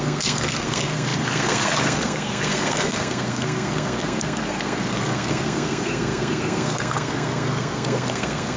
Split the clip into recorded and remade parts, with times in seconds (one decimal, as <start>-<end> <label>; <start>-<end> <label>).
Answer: 0.0-8.6 remade